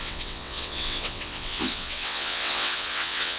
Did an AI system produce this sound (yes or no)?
yes